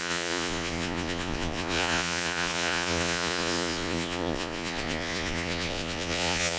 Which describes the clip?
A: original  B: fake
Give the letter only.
B